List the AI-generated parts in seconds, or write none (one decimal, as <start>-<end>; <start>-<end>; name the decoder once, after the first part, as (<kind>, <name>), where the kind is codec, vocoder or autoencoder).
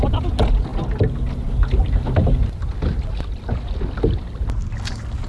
none